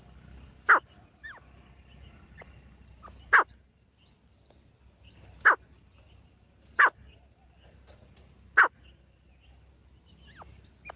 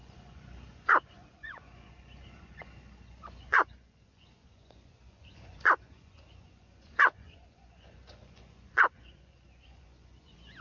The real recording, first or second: first